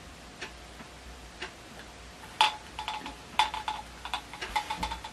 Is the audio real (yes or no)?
yes